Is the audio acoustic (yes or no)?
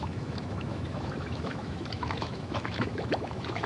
no